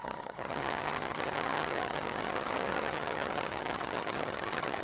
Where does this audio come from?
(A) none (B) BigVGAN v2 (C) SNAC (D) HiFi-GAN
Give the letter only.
D